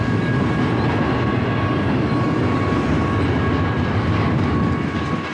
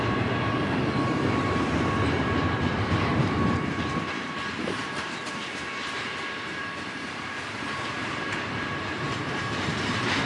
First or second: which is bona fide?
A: first